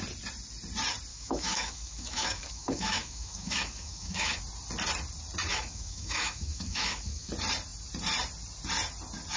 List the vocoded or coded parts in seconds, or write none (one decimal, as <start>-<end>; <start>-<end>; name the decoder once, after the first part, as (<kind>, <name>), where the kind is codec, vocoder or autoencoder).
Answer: 1.1-4.4 (autoencoder, DAC-VAE); 5.5-7.3